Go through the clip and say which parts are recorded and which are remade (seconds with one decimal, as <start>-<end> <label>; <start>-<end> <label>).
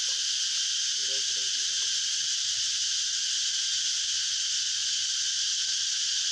0.0-6.3 recorded